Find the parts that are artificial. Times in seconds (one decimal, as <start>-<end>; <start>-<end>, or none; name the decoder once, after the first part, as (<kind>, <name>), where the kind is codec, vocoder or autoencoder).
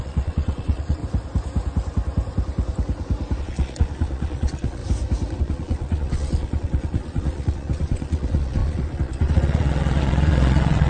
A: 0.0-1.0 (vocoder, Vocos); 3.4-4.8; 5.4-10.9